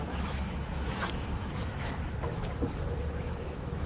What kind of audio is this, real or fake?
fake